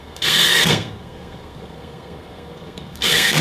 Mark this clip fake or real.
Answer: fake